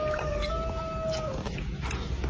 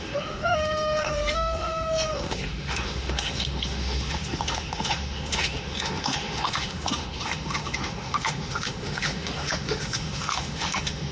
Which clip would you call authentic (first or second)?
first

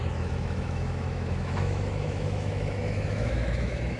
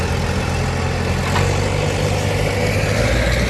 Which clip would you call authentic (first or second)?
second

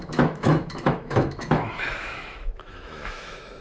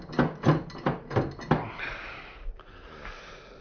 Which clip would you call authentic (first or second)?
second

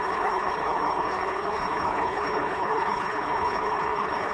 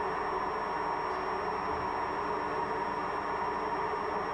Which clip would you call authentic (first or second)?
second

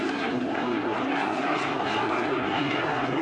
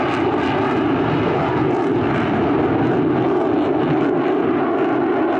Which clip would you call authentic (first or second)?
second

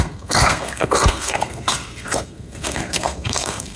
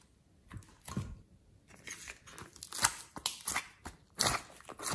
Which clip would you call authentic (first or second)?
second